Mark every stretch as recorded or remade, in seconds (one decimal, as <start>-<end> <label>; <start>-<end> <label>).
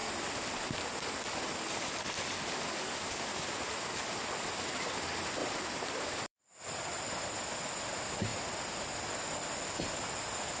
0.0-5.4 recorded; 5.4-7.0 remade; 7.0-8.3 recorded; 8.3-8.9 remade; 8.9-10.6 recorded